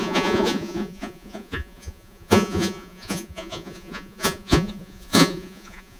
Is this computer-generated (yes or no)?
yes